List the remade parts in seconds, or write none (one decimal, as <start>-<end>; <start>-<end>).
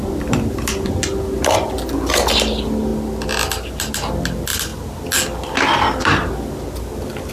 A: none